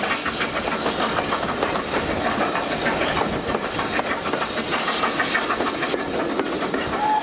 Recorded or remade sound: recorded